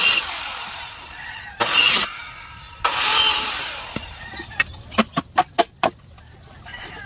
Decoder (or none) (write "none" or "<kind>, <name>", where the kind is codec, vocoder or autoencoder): none